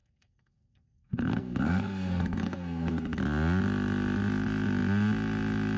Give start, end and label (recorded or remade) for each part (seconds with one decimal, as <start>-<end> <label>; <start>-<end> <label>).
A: 0.0-3.2 remade; 3.2-5.8 recorded

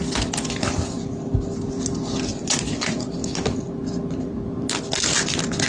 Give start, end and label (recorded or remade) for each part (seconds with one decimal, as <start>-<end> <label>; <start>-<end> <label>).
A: 0.0-2.3 recorded; 2.3-3.1 remade; 3.1-5.7 recorded

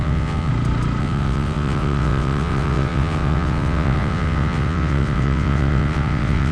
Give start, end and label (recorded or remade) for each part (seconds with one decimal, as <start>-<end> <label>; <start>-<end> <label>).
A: 0.0-0.5 remade; 0.5-1.0 recorded; 1.0-6.5 remade

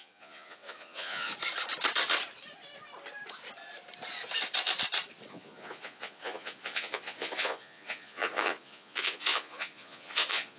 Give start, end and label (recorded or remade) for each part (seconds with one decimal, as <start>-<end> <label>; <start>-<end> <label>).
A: 0.0-1.3 remade; 1.3-5.3 recorded; 5.3-10.6 remade

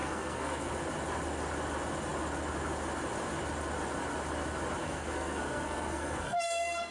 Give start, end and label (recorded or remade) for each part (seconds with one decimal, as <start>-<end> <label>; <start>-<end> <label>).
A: 0.0-0.7 remade; 0.7-4.8 recorded; 4.8-6.9 remade

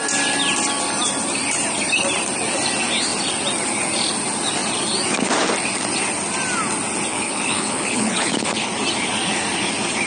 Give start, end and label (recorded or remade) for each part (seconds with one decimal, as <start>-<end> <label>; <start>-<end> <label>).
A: 0.0-7.1 recorded; 7.1-8.7 remade; 8.7-10.1 recorded